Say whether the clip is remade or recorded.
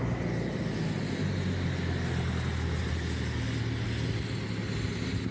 recorded